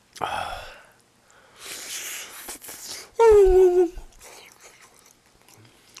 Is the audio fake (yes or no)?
no